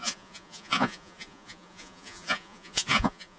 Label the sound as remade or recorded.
remade